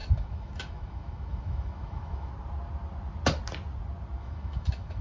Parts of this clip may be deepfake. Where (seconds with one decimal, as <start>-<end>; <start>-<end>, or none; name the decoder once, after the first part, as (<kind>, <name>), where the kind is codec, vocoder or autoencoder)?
0.0-2.3 (autoencoder, DAC-VAE); 4.2-5.0